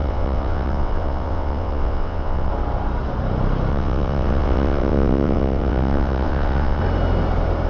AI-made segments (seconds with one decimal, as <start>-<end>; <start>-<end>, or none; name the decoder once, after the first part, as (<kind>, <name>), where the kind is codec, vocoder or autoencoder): 0.0-2.5 (vocoder, WaveNeXt); 3.7-6.8